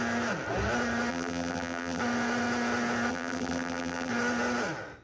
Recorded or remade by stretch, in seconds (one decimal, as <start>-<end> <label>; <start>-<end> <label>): 0.0-1.1 recorded; 1.1-2.0 remade; 2.0-3.1 recorded; 3.1-4.1 remade; 4.1-5.0 recorded